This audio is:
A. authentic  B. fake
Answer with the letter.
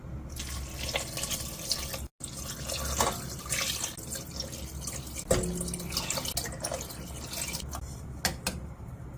A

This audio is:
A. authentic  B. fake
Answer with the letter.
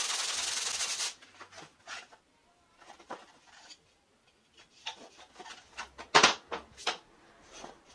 A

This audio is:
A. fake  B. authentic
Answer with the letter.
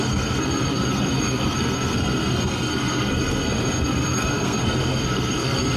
A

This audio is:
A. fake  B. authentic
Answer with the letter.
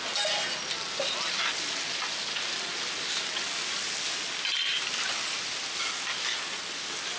B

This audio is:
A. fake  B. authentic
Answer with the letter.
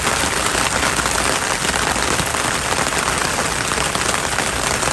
B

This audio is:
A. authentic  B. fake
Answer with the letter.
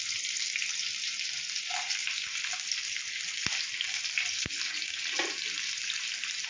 A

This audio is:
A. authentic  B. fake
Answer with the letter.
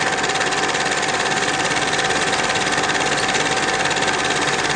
A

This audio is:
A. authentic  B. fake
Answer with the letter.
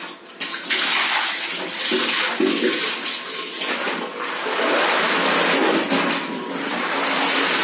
A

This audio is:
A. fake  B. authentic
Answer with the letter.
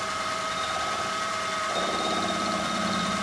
A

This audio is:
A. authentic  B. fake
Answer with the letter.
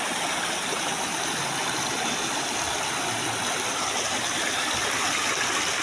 A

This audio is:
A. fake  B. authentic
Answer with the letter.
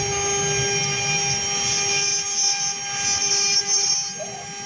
B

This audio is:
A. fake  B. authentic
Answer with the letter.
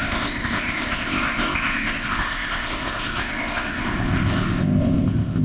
A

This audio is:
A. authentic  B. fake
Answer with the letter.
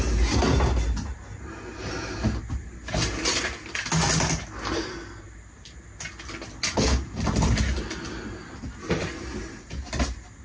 A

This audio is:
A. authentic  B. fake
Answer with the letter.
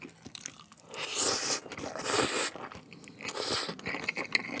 A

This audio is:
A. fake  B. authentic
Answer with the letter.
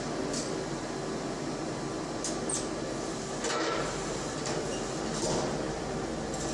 B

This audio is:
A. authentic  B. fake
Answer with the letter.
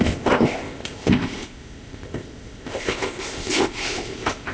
B